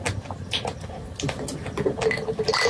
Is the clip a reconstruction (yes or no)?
no